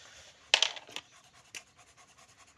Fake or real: real